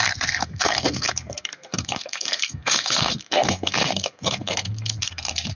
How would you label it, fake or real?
fake